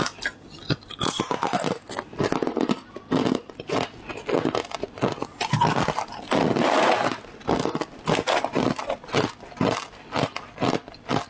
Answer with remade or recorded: recorded